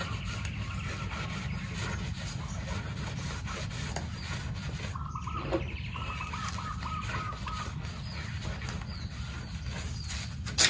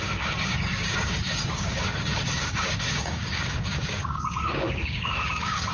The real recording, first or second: first